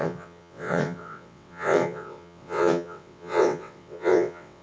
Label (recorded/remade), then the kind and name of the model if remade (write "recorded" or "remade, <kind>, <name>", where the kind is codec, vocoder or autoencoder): remade, vocoder, WaveNeXt